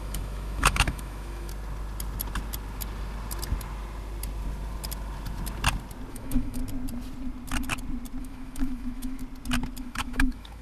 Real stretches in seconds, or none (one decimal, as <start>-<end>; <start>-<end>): 1.5-6.1; 6.6-8.2; 9.2-9.8